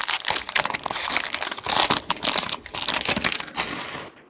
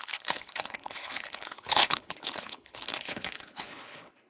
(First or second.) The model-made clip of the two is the second